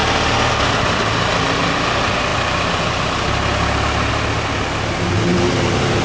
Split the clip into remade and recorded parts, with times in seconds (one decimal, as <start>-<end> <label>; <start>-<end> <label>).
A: 0.0-6.0 recorded